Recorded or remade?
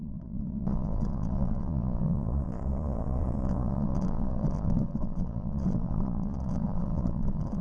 remade